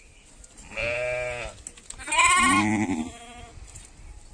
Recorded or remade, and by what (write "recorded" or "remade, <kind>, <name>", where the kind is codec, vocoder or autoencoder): recorded